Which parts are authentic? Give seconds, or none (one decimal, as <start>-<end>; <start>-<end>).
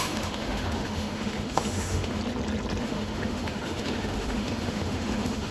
2.2-2.8